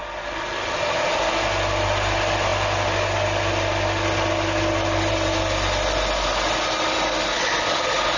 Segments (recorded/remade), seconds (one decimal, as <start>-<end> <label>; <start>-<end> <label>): 0.0-8.2 recorded